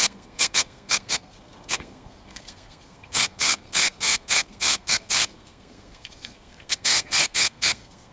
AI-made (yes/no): yes